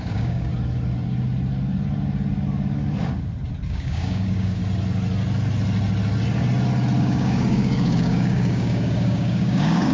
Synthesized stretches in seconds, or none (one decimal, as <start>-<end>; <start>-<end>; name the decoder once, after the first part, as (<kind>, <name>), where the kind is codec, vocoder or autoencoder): 0.0-0.5 (codec, DAC); 3.7-4.6; 7.0-9.9